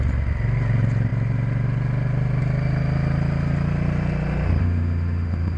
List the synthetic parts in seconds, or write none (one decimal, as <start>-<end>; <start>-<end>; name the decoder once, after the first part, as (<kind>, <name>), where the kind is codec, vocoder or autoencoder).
4.6-5.6 (autoencoder, DAC-VAE)